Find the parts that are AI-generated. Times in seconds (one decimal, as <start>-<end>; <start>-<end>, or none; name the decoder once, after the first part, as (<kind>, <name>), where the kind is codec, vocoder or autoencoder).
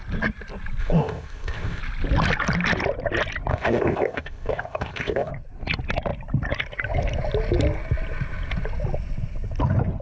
0.8-1.8 (codec, ZipCodec); 3.5-5.3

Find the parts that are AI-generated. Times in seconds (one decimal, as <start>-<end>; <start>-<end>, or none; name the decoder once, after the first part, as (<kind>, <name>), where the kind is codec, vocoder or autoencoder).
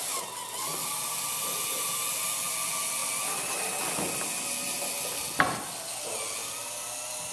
none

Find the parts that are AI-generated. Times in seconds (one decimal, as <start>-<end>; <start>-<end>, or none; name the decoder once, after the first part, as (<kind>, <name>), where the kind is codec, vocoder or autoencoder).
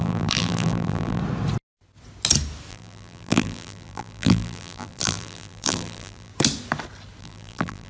0.0-1.2 (vocoder, BigVGAN v2); 2.7-6.3; 7.2-7.9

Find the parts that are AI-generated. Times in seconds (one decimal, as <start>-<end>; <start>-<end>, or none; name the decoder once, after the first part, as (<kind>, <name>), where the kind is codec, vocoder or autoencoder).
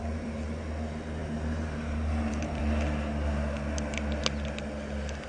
0.0-0.6 (vocoder, BigVGAN v2); 1.2-2.6